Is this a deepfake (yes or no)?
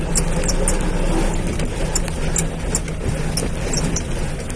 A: no